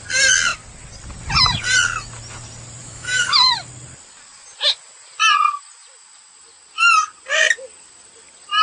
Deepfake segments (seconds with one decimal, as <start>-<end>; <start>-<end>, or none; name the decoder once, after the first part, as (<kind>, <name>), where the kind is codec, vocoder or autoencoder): 2.8-3.5 (autoencoder, DAC-VAE)